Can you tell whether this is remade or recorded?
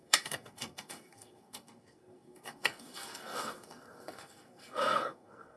remade